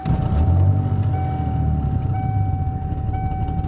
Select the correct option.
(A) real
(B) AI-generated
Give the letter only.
A